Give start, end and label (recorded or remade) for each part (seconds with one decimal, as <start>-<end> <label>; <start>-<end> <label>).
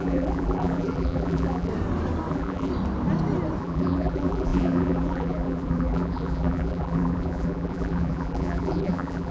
0.0-1.7 remade; 1.7-2.3 recorded; 2.3-2.7 remade; 2.7-3.6 recorded; 3.6-9.3 remade